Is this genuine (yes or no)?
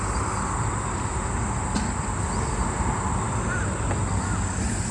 yes